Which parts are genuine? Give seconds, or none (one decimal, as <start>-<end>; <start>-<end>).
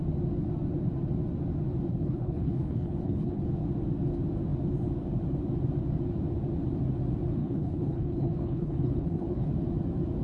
0.0-1.9; 3.4-7.4; 9.5-10.2